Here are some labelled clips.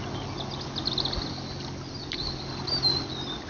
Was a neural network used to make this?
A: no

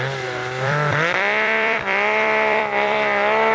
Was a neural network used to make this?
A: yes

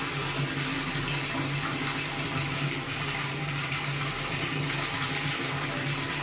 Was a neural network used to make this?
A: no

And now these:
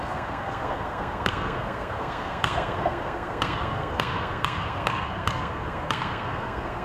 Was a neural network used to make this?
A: yes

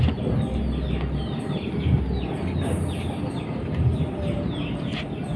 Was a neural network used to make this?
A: no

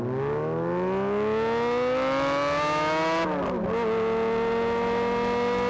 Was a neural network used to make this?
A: no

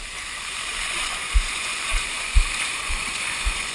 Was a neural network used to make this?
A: yes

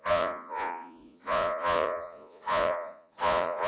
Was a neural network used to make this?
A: yes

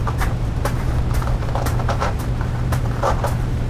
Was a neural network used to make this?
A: yes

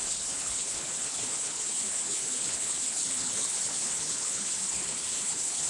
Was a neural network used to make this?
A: yes